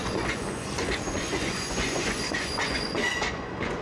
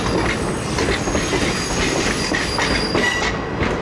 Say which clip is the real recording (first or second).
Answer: second